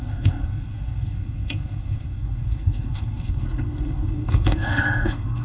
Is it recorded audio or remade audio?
remade